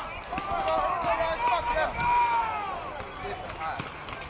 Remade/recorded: recorded